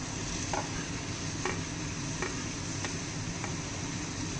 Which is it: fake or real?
real